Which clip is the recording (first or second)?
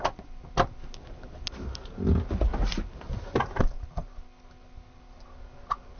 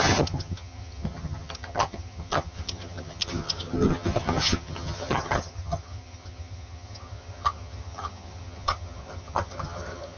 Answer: first